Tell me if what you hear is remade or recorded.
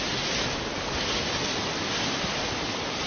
recorded